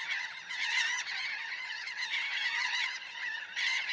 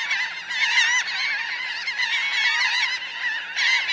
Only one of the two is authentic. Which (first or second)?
second